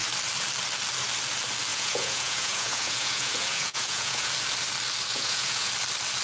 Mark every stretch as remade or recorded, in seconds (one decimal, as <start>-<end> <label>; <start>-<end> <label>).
0.0-1.7 recorded; 1.7-4.3 remade; 4.3-5.1 recorded; 5.1-5.7 remade; 5.7-6.2 recorded